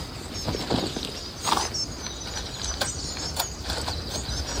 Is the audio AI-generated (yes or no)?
no